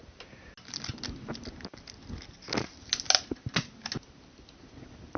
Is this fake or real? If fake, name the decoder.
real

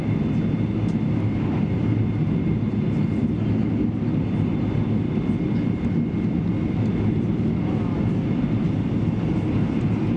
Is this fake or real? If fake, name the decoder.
real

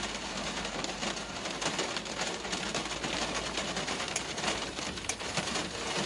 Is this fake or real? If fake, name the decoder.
fake, vocoder, BigVGAN v2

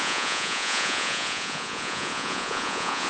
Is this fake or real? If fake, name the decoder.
fake, vocoder, Vocos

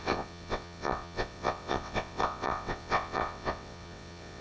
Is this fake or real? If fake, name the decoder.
fake, vocoder, WaveNeXt